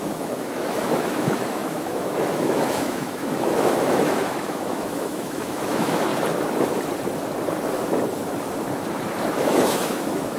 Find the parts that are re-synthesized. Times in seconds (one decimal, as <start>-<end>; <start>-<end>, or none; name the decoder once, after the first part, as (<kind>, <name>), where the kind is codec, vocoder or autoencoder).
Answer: 0.0-6.1 (autoencoder, DAC-VAE); 9.4-10.4